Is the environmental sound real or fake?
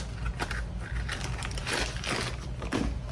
real